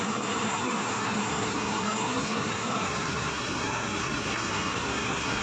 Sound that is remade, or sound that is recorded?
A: remade